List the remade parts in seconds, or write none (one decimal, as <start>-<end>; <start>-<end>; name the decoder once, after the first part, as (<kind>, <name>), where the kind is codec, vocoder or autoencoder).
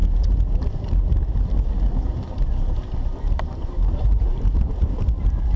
3.4-5.6 (vocoder, BigVGAN v2)